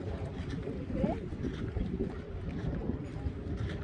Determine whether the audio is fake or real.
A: real